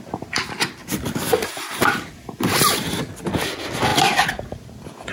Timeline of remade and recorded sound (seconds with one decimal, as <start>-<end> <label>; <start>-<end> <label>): 0.0-0.8 recorded; 0.8-3.2 remade; 3.2-5.1 recorded